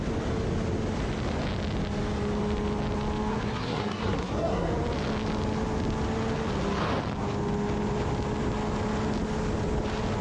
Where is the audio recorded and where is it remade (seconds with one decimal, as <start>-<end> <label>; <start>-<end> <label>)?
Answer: 0.0-3.3 recorded; 3.3-4.7 remade; 4.7-10.2 recorded